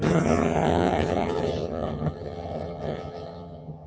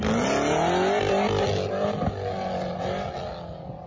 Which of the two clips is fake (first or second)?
first